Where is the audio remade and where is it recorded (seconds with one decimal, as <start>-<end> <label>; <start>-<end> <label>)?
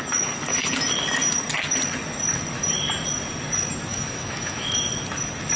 0.0-3.9 recorded; 3.9-4.9 remade; 4.9-5.6 recorded